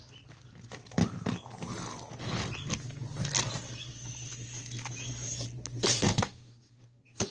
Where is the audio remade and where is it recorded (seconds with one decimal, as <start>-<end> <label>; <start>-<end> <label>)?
0.0-5.9 recorded; 5.9-7.3 remade